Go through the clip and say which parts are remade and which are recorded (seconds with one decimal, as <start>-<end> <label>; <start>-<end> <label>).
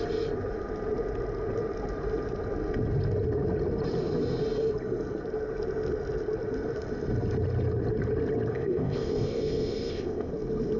0.0-8.5 recorded; 8.5-10.3 remade; 10.3-10.8 recorded